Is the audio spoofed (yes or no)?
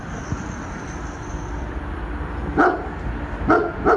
yes